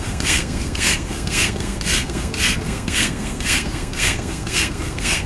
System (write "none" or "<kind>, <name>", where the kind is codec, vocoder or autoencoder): codec, SNAC